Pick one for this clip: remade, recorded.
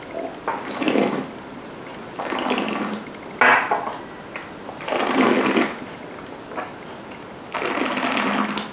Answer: recorded